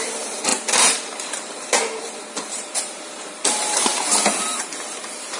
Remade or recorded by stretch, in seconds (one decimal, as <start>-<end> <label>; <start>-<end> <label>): 0.0-3.9 remade; 3.9-4.5 recorded; 4.5-5.4 remade